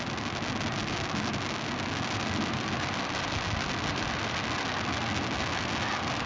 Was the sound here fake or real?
real